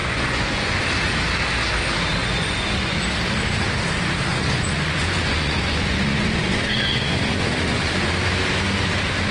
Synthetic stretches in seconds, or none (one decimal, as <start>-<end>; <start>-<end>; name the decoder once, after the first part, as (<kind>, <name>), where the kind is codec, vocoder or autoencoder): 0.0-0.8 (vocoder, Vocos); 2.2-3.0; 4.3-8.1